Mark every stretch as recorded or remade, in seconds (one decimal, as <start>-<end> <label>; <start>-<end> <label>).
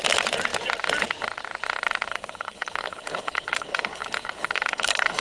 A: 0.0-2.1 recorded; 2.1-5.2 remade